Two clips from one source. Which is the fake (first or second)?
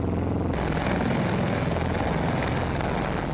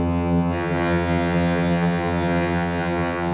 second